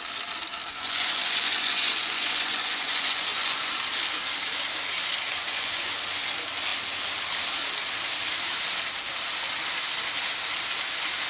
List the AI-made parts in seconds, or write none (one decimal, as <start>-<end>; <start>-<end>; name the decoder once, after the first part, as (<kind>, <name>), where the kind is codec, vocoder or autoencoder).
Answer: 0.7-3.7 (vocoder, Vocos); 5.3-5.9